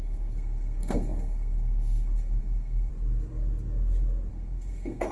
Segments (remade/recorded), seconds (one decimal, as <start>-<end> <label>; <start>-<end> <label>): 0.0-2.9 remade; 2.9-4.3 recorded; 4.3-5.1 remade